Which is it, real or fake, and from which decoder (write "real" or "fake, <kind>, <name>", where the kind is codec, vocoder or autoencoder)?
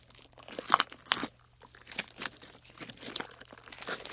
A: real